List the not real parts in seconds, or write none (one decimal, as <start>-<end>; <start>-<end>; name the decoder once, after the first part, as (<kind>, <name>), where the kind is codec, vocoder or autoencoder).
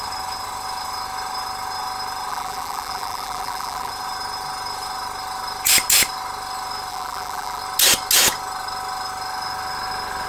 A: 2.3-3.9 (vocoder, BigVGAN v2); 6.9-7.6